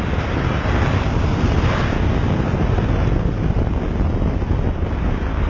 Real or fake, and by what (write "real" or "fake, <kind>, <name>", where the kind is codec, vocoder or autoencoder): real